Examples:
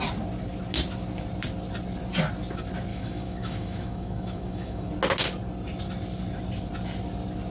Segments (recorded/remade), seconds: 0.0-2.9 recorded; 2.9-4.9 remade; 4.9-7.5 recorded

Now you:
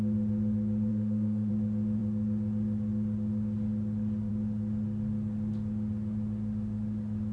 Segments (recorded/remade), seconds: 0.0-0.9 recorded; 0.9-1.5 remade; 1.5-7.3 recorded

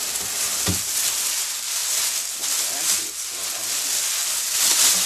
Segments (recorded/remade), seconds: 0.0-5.1 recorded

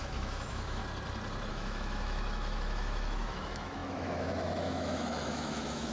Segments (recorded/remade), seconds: 0.0-0.8 remade; 0.8-1.5 recorded; 1.5-5.9 remade

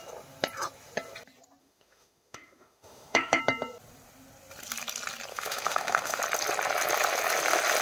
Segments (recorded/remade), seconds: 0.0-1.6 recorded; 1.6-3.4 remade; 3.4-5.3 recorded; 5.3-6.2 remade; 6.2-7.8 recorded

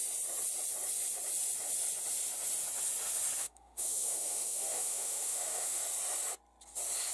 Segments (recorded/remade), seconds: 0.0-3.4 recorded; 3.4-5.8 remade; 5.8-7.1 recorded

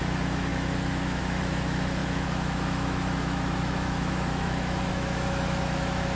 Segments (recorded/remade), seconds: 0.0-6.1 remade